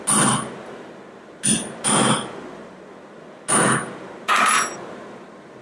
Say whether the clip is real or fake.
real